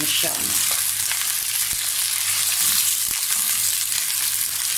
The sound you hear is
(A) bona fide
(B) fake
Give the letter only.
A